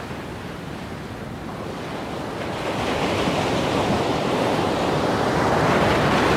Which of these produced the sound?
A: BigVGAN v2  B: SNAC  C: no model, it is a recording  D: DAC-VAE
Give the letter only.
C